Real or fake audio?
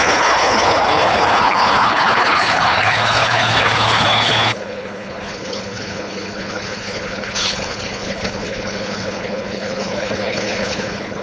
fake